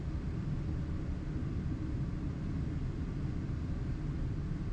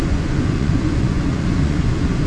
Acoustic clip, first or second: first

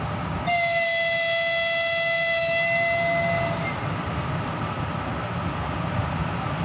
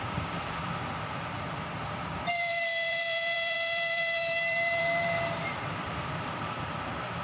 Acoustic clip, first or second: first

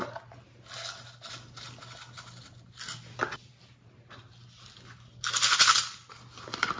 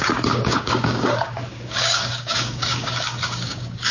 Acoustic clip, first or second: first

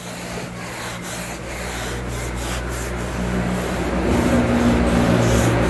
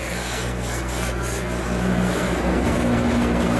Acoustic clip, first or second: first